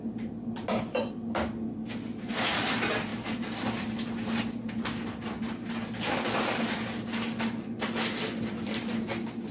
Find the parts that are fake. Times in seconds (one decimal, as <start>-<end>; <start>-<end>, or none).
none